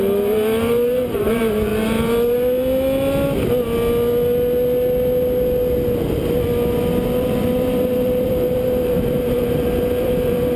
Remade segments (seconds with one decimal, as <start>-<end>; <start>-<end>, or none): 0.0-1.7; 7.0-10.6